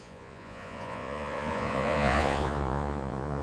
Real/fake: fake